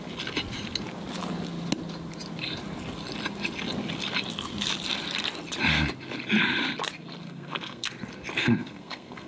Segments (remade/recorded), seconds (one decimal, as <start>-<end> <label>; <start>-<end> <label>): 0.0-7.2 recorded; 7.2-7.9 remade; 7.9-8.4 recorded; 8.4-9.3 remade